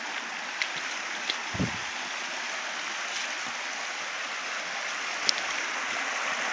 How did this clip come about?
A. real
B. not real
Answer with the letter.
A